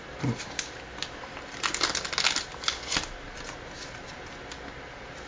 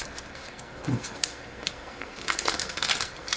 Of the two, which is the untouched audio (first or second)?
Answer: first